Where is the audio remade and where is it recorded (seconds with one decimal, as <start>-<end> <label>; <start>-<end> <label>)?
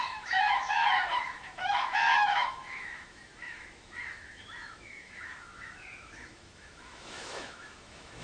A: 0.0-8.2 remade